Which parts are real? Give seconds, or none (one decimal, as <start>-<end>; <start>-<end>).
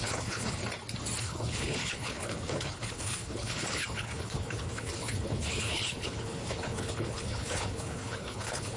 0.6-1.2